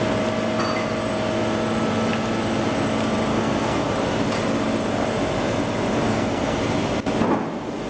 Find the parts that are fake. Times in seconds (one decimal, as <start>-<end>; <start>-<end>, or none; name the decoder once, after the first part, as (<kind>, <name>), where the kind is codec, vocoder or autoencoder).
3.3-3.9 (codec, SNAC); 6.1-6.6